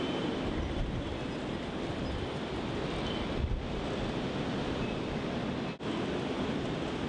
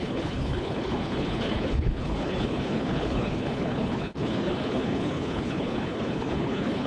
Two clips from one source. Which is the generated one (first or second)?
second